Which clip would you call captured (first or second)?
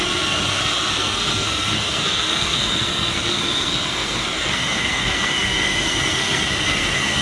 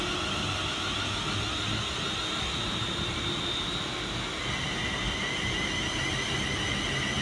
second